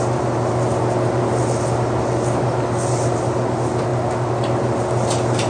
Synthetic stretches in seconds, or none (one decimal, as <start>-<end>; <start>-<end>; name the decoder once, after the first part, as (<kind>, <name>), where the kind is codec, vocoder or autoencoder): none